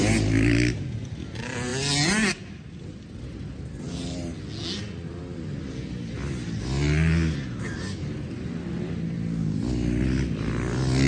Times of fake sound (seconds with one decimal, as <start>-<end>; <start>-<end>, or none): none

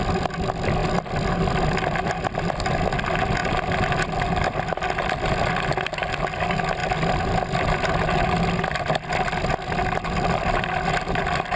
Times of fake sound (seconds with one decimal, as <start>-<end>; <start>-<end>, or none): none